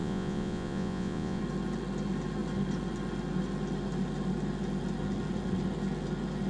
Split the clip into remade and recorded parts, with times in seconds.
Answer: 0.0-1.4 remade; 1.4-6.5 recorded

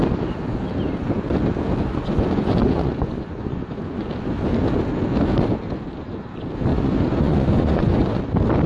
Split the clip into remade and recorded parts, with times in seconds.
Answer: 0.0-1.9 recorded; 1.9-4.1 remade; 4.1-6.7 recorded; 6.7-8.2 remade; 8.2-8.7 recorded

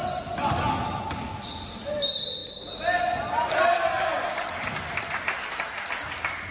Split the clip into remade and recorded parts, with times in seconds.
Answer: 0.0-6.5 recorded

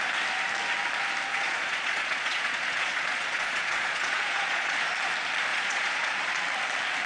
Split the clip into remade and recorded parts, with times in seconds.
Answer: 0.0-1.3 recorded; 1.3-4.8 remade; 4.8-5.5 recorded; 5.5-6.3 remade; 6.3-7.1 recorded

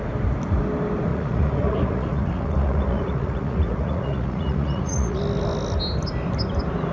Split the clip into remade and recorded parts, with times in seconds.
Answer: 0.0-1.1 recorded; 1.1-5.2 remade; 5.2-6.9 recorded

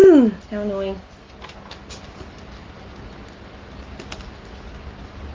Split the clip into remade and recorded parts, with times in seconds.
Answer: 0.0-5.3 recorded

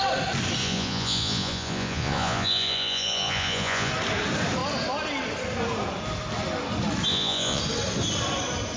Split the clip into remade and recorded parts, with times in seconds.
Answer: 0.0-0.6 recorded; 0.6-3.9 remade; 3.9-7.1 recorded; 7.1-7.6 remade; 7.6-8.8 recorded